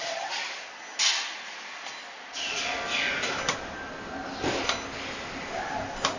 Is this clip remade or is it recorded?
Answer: recorded